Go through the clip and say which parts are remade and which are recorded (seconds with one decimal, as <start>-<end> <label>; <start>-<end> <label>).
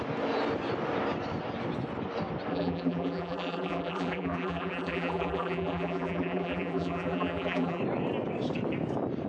0.0-2.5 recorded; 2.5-7.8 remade; 7.8-9.3 recorded